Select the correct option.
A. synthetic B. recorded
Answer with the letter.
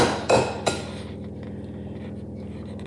B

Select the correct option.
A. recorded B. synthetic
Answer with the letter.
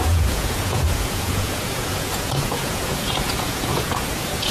B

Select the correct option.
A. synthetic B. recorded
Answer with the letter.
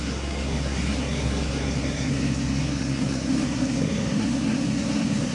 A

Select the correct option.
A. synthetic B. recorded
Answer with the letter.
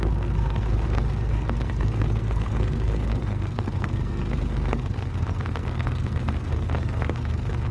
A